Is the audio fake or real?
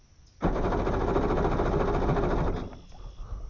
real